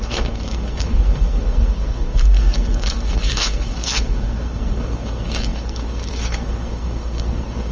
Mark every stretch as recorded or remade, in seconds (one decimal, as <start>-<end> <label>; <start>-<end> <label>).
0.0-7.7 remade